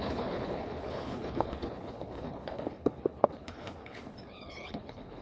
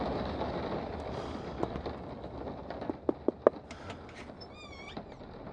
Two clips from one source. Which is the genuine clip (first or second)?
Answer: second